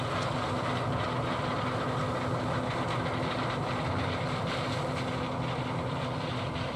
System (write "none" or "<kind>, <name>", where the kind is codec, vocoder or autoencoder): none